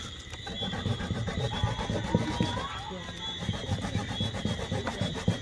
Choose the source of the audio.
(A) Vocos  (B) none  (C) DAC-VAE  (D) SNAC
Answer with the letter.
B